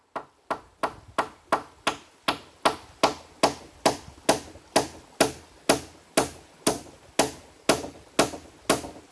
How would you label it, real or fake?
real